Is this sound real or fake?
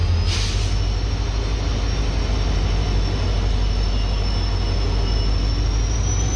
real